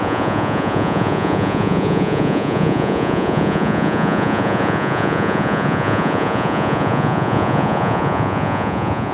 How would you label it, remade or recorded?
remade